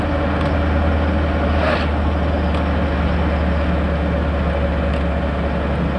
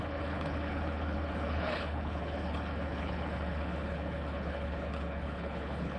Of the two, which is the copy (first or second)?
second